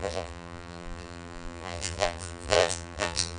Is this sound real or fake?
fake